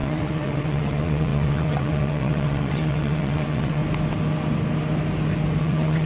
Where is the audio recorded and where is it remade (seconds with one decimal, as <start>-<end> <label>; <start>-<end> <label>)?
0.0-3.8 remade; 3.8-5.6 recorded; 5.6-6.1 remade